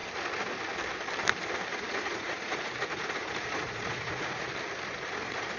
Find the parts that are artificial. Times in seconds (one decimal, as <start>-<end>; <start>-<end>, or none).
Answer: 1.7-4.5